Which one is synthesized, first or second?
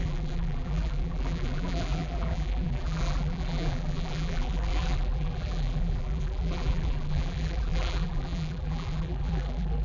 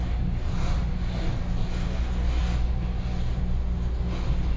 first